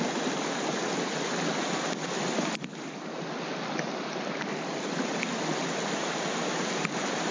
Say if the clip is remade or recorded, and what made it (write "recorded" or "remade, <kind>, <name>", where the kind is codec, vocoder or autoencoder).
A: recorded